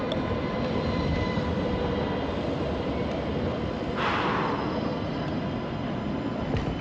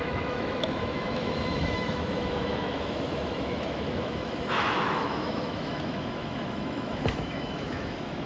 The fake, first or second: second